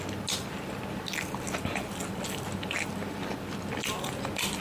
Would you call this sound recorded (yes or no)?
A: yes